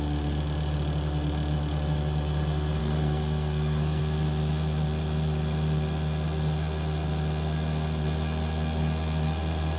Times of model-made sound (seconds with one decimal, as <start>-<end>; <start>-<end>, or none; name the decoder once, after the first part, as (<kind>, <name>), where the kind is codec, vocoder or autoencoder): 2.8-4.0 (codec, SNAC)